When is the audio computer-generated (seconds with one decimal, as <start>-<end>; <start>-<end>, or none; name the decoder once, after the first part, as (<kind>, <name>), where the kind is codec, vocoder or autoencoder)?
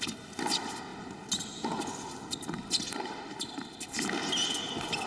none